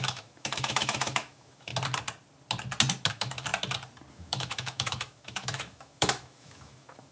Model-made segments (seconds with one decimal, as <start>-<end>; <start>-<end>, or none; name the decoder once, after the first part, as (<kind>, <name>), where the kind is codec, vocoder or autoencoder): 0.0-1.7 (autoencoder, DAC-VAE); 3.1-3.5; 4.1-7.1